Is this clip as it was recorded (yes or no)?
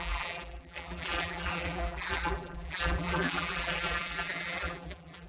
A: no